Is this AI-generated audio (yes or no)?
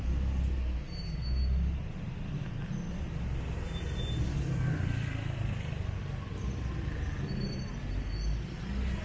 no